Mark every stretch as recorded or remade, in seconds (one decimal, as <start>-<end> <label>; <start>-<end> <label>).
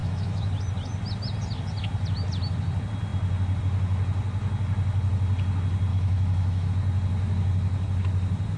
0.0-0.5 remade; 0.5-5.9 recorded; 5.9-6.7 remade; 6.7-8.6 recorded